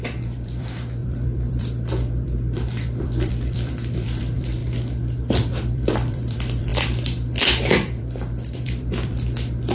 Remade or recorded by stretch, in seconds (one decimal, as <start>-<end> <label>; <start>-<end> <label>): 0.0-4.6 remade; 4.6-5.6 recorded; 5.6-6.7 remade; 6.7-7.6 recorded; 7.6-9.7 remade